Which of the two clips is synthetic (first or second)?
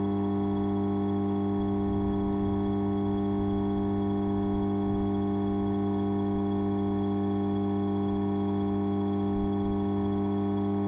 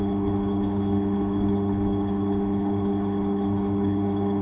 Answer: second